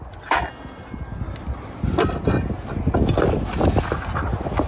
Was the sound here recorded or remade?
recorded